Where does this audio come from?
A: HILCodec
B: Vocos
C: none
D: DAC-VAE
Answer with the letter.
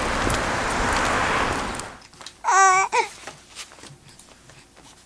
C